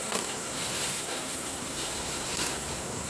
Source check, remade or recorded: remade